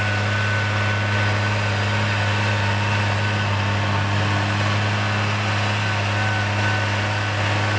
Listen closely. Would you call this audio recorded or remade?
recorded